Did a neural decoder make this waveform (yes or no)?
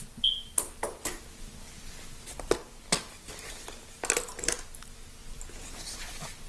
no